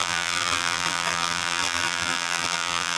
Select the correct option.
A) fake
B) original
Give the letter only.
A